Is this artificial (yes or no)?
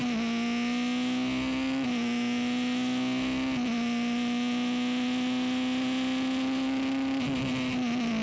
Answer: no